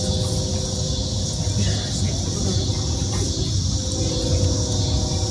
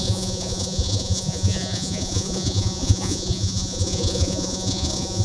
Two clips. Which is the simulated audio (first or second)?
second